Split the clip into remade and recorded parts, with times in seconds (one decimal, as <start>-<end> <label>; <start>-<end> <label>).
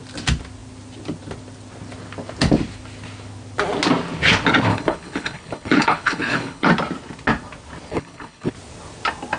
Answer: 0.0-4.7 recorded; 4.7-6.7 remade; 6.7-7.9 recorded; 7.9-8.5 remade; 8.5-9.4 recorded